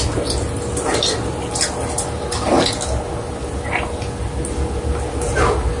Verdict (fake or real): real